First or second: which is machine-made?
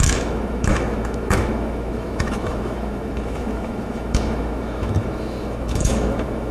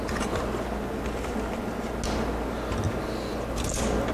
first